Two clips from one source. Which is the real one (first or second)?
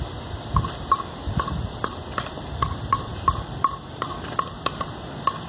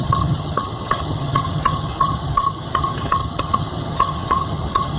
first